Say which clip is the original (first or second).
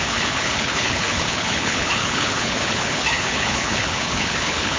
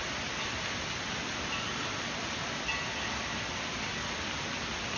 second